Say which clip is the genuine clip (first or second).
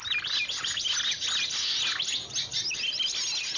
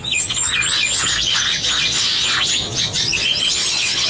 first